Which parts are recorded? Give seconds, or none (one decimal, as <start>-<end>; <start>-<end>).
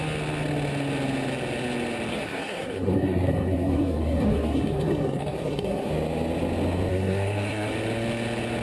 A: 0.0-2.1; 5.9-6.9; 7.7-8.6